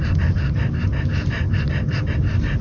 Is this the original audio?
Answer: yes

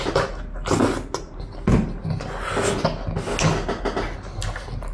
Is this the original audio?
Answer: yes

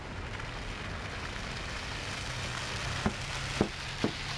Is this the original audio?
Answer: yes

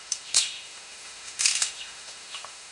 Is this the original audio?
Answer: no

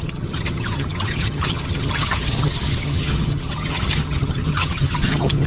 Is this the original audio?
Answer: no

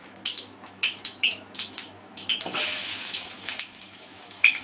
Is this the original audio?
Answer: no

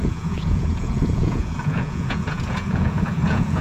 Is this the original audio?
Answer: no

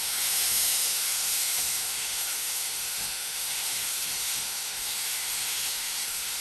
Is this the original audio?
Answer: no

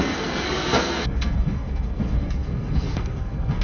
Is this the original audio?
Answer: no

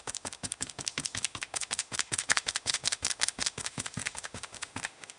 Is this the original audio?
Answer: no